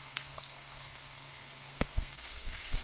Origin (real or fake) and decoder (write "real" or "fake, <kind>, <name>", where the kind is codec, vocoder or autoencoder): fake, codec, SNAC